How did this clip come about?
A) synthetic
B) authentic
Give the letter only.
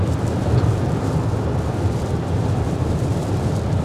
A